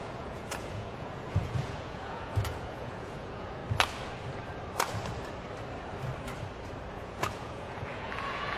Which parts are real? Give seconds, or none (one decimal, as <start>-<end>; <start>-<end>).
3.6-6.9